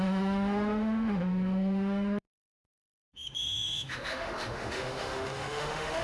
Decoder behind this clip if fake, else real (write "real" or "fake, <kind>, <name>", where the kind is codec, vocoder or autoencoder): fake, autoencoder, DAC-VAE